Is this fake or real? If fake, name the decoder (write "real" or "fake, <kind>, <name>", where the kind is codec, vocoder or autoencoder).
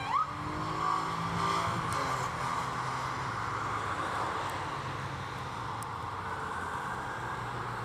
real